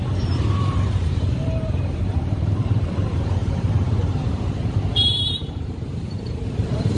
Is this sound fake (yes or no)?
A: yes